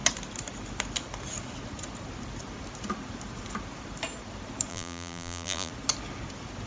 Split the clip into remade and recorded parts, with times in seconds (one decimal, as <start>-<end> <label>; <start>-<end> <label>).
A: 0.0-4.7 recorded; 4.7-5.7 remade; 5.7-6.7 recorded